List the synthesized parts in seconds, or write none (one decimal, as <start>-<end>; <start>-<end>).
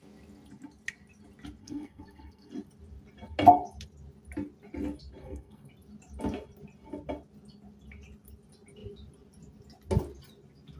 1.6-2.5; 5.2-5.7